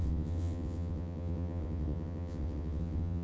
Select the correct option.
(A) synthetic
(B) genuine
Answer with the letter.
A